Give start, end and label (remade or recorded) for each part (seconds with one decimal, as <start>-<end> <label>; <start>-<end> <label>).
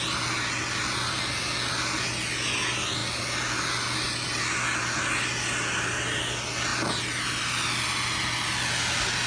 0.0-9.3 recorded